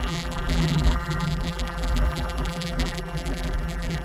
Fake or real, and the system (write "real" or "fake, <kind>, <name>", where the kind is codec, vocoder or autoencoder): fake, vocoder, BigVGAN v2